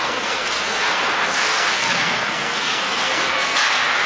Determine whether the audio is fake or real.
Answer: fake